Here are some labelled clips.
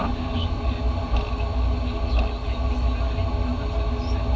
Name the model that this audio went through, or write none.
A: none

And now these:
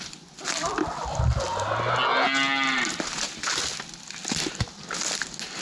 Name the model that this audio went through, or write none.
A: none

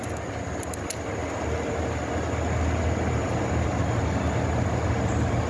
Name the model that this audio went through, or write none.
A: none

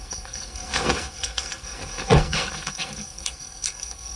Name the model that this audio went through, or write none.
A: codec, SNAC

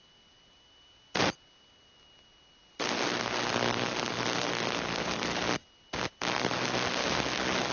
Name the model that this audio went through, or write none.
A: none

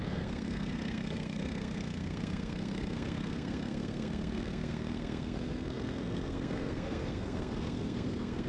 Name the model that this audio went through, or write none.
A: codec, SNAC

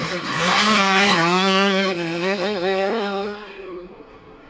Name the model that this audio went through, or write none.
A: codec, SNAC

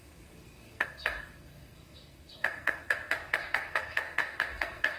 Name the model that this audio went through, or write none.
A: codec, SNAC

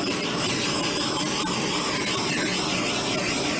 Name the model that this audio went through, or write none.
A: none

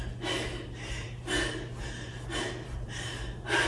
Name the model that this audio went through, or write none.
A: none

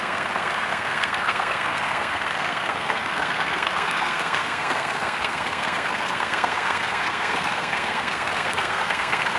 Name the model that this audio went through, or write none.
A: codec, SNAC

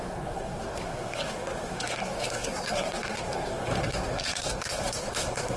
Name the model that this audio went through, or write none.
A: codec, SNAC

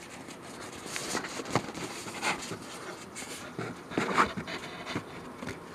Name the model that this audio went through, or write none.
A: none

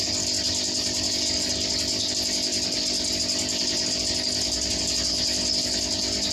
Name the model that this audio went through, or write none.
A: none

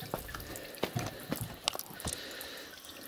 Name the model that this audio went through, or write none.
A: none